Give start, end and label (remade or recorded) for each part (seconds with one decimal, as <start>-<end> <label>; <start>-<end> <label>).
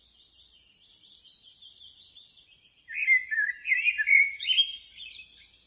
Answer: 0.0-5.7 recorded